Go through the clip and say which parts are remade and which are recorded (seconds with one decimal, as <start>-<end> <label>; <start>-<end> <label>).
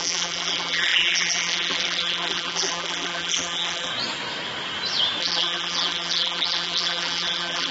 0.0-3.9 remade; 3.9-5.2 recorded; 5.2-7.7 remade